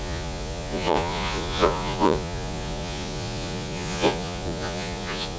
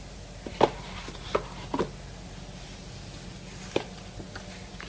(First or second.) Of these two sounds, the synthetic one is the first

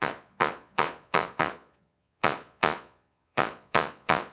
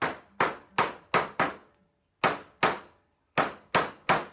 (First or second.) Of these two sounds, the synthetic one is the first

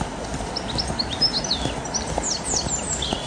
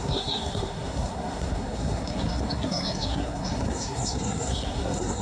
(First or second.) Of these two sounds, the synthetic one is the second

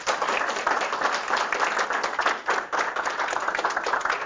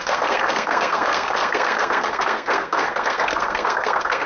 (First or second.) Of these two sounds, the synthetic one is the second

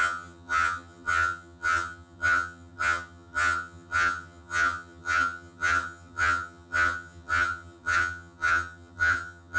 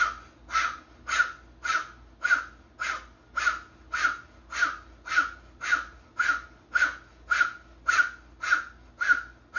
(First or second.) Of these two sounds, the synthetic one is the first